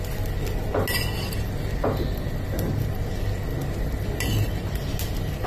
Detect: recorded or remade recorded